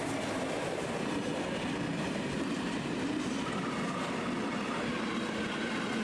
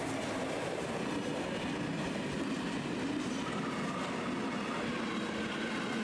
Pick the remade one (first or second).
first